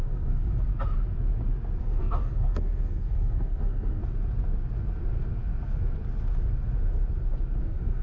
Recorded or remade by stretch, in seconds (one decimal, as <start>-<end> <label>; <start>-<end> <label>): 0.0-0.7 remade; 0.7-1.8 recorded; 1.8-4.0 remade; 4.0-7.6 recorded; 7.6-8.0 remade